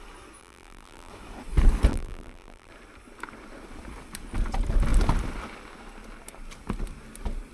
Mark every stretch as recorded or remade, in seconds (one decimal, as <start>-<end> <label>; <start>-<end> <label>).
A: 0.0-0.4 recorded; 0.4-1.1 remade; 1.1-1.9 recorded; 1.9-2.7 remade; 2.7-7.5 recorded